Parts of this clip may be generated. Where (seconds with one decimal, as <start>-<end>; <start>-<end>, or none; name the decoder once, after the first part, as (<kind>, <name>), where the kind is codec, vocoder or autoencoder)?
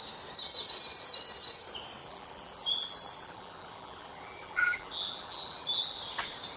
2.0-6.0 (vocoder, BigVGAN v2)